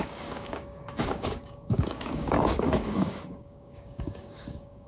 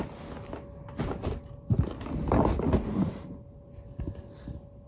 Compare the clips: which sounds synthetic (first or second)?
first